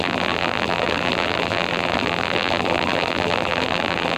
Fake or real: fake